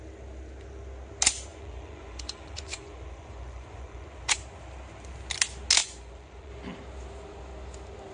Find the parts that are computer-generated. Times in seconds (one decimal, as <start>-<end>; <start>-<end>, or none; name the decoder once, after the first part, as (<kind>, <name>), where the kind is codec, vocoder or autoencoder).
1.5-4.4 (vocoder, Vocos); 5.8-6.5